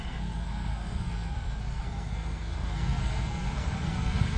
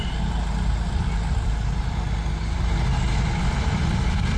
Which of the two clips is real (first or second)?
second